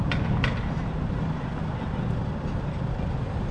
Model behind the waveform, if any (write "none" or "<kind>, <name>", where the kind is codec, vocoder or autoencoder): none